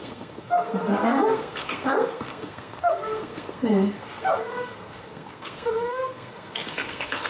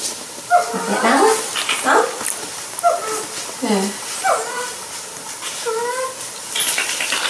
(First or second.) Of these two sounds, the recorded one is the second